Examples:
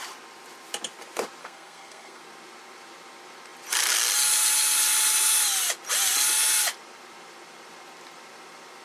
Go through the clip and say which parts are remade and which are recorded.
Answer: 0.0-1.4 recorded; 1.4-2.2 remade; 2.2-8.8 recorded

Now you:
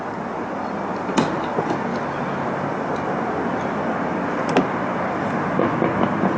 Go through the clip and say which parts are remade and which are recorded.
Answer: 0.0-6.4 recorded

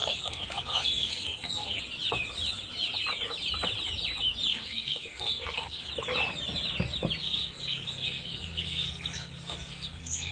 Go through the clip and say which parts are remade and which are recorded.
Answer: 0.0-1.8 remade; 1.8-4.5 recorded; 4.5-5.9 remade; 5.9-7.2 recorded; 7.2-10.3 remade

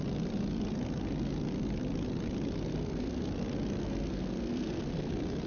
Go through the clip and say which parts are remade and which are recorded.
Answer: 0.0-2.7 recorded; 2.7-3.2 remade; 3.2-3.8 recorded; 3.8-5.1 remade; 5.1-5.5 recorded

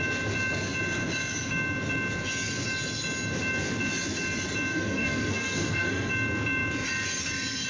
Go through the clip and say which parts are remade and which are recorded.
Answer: 0.0-4.7 recorded; 4.7-6.1 remade; 6.1-7.7 recorded

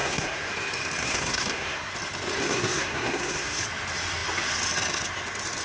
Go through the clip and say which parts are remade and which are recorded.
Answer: 0.0-0.5 remade; 0.5-1.0 recorded; 1.0-1.9 remade; 1.9-2.4 recorded; 2.4-3.6 remade; 3.6-5.6 recorded

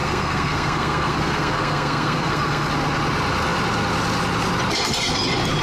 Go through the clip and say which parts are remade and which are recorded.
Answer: 0.0-2.7 remade; 2.7-5.6 recorded

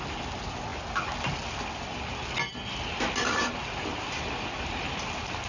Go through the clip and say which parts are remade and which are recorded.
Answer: 0.0-5.5 recorded